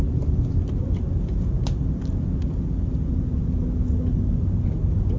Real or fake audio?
real